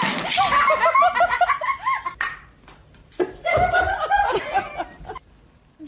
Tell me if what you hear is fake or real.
real